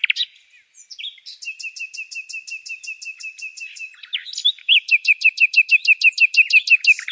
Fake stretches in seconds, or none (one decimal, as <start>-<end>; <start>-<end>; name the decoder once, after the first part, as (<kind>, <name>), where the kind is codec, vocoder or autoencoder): 4.4-5.7 (vocoder, BigVGAN v2)